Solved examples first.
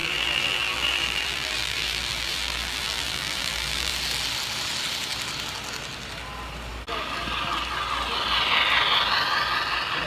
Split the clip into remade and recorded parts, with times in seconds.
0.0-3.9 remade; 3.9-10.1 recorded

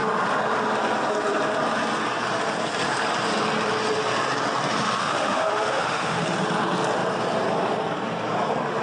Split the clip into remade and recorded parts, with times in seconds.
0.0-5.0 recorded; 5.0-6.2 remade; 6.2-8.8 recorded

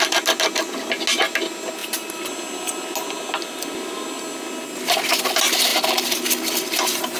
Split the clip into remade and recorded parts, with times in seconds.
0.0-7.2 recorded

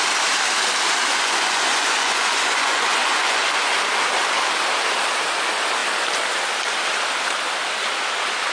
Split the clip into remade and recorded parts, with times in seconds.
0.0-1.1 recorded; 1.1-3.7 remade; 3.7-8.5 recorded

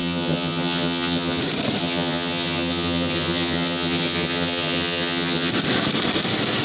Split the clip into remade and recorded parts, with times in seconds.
0.0-1.4 remade; 1.4-1.8 recorded; 1.8-5.5 remade; 5.5-6.6 recorded

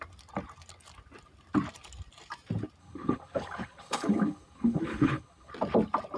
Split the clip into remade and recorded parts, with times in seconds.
0.0-2.8 recorded; 2.8-5.5 remade; 5.5-6.2 recorded